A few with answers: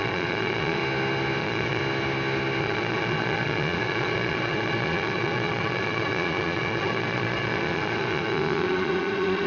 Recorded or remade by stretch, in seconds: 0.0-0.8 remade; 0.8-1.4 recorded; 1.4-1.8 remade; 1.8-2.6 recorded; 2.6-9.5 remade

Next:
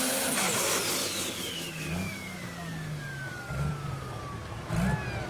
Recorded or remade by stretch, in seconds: 0.0-1.0 recorded; 1.0-4.2 remade; 4.2-5.3 recorded

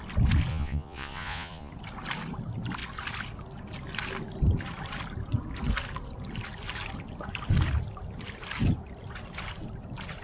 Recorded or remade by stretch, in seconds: 0.0-0.5 recorded; 0.5-1.7 remade; 1.7-10.2 recorded